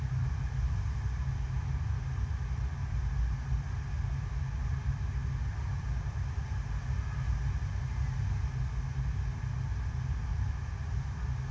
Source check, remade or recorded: recorded